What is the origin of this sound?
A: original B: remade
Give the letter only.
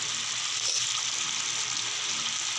A